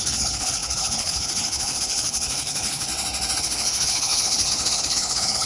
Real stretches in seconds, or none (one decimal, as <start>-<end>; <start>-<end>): 2.9-3.4